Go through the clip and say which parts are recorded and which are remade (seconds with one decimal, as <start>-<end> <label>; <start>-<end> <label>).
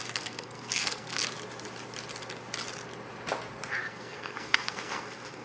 0.0-1.2 remade; 1.2-3.7 recorded; 3.7-5.4 remade